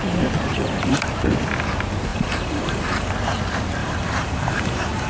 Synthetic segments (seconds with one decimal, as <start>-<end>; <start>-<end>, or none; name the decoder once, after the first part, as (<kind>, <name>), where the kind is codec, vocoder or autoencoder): 0.5-1.1 (vocoder, BigVGAN v2); 2.1-3.1; 3.8-5.1

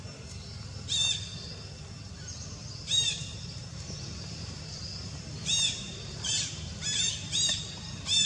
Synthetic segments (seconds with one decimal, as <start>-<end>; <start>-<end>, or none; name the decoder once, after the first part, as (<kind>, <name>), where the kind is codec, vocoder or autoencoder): 2.6-6.4 (vocoder, BigVGAN v2)

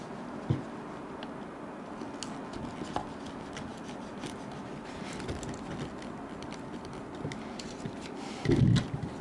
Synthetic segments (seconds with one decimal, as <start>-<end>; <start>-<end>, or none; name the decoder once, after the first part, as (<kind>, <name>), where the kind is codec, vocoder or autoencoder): none

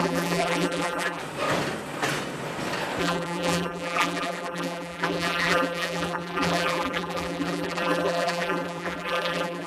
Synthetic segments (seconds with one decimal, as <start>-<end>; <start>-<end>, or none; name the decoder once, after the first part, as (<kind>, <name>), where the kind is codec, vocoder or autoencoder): 0.0-1.2 (vocoder, BigVGAN v2); 3.0-9.7

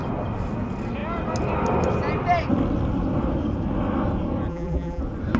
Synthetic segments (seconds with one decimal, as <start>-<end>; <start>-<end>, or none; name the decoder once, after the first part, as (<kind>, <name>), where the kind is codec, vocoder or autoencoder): 4.5-5.0 (vocoder, BigVGAN v2)

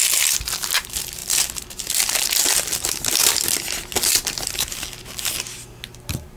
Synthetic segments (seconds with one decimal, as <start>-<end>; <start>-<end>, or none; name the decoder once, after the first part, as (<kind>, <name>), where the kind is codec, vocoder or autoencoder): none

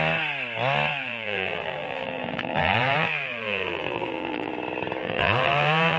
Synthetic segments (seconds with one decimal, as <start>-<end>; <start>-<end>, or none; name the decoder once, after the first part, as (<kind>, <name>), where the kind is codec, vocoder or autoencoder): 0.9-4.5 (vocoder, BigVGAN v2); 5.0-6.0